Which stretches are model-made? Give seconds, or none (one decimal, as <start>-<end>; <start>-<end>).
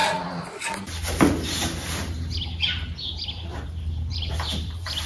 3.5-5.1